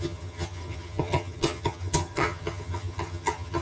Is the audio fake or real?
fake